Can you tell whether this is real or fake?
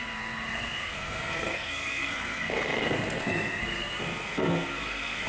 fake